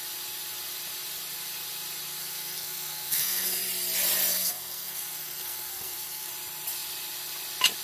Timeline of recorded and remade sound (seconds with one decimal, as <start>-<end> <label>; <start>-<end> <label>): 0.0-2.2 recorded; 2.2-3.6 remade; 3.6-4.3 recorded; 4.3-6.3 remade; 6.3-7.8 recorded